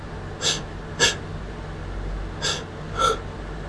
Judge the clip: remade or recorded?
recorded